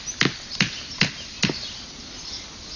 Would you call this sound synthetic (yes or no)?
no